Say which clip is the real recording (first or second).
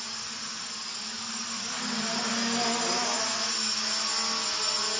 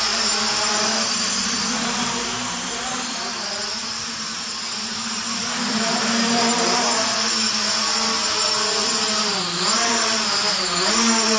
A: first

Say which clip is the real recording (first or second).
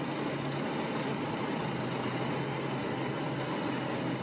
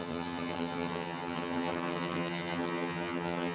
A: first